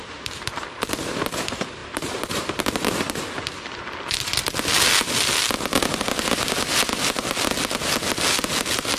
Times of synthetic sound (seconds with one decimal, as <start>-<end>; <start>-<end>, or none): 1.8-2.9